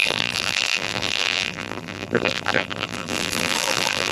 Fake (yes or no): yes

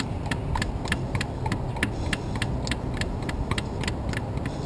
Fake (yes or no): no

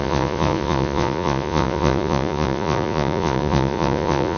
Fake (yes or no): yes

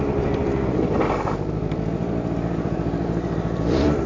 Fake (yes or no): yes